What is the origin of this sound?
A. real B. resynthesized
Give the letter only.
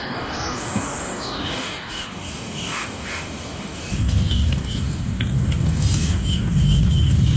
B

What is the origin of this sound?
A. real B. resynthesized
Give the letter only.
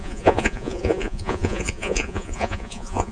B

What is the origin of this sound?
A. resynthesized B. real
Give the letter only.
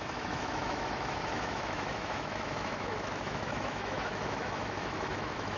A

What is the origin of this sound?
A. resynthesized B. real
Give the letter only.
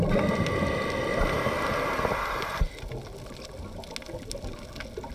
B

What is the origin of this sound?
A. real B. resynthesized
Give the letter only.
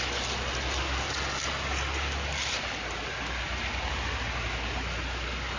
A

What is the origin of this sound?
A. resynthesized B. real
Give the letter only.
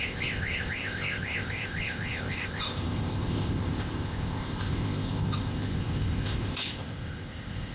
A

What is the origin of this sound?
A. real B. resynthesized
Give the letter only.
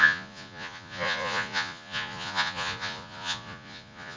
B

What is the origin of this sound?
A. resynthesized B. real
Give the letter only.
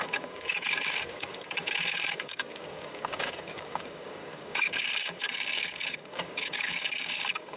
A